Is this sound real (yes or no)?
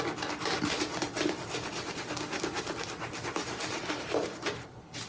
no